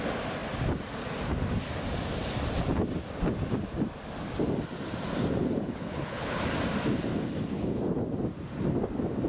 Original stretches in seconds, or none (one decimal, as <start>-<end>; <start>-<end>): 0.0-5.4; 6.4-7.1; 7.8-9.3